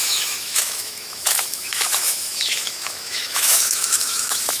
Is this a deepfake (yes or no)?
yes